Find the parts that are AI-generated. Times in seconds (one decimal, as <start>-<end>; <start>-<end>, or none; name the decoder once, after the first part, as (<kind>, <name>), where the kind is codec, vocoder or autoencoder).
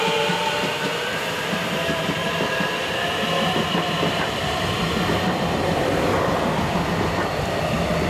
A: 0.0-8.1 (vocoder, BigVGAN v2)